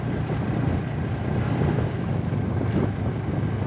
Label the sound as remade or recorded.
recorded